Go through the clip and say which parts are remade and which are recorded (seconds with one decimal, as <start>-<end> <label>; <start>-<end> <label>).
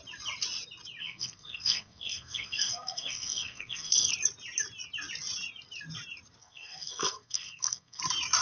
0.0-1.0 recorded; 1.0-4.1 remade; 4.1-6.4 recorded; 6.4-8.0 remade; 8.0-8.4 recorded